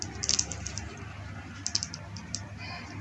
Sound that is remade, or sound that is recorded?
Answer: recorded